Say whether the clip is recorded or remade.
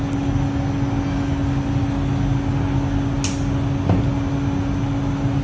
recorded